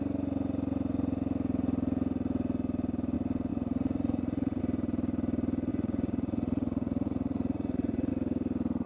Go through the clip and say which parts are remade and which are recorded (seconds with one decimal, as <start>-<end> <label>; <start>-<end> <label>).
0.0-3.5 recorded; 3.5-4.6 remade; 4.6-5.7 recorded; 5.7-8.1 remade; 8.1-8.9 recorded